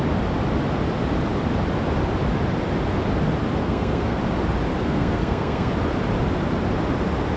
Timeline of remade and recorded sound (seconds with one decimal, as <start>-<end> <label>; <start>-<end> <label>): 0.0-3.6 recorded; 3.6-4.2 remade; 4.2-4.8 recorded; 4.8-5.7 remade; 5.7-7.4 recorded